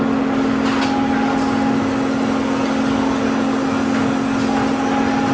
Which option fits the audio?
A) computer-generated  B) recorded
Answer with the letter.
B